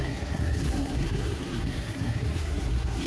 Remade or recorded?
remade